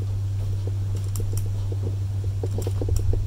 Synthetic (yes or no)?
no